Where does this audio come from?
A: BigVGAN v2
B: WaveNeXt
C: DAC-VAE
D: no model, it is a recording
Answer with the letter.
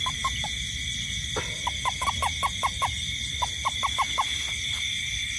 D